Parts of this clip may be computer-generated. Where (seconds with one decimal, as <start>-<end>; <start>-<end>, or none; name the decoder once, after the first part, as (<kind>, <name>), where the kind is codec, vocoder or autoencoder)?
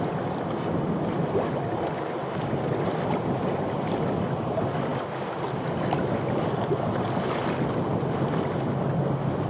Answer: none